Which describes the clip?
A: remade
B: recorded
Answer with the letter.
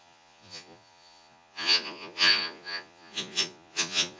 A